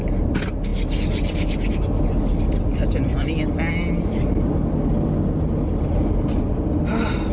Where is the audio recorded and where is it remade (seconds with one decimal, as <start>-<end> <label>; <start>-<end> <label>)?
0.0-7.3 recorded